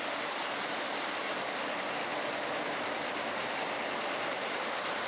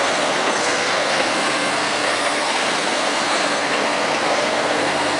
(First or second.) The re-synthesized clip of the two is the second